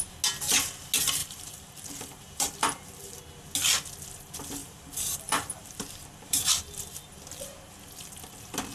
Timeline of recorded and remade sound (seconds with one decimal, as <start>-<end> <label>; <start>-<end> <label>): 0.0-1.2 recorded; 1.2-3.2 remade; 3.2-4.6 recorded; 4.6-6.6 remade; 6.6-8.7 recorded